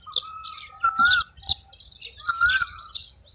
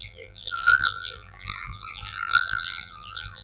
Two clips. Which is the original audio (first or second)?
first